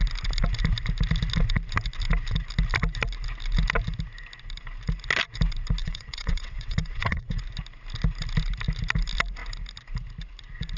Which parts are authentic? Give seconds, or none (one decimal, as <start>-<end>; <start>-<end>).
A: 0.0-5.8; 7.4-10.8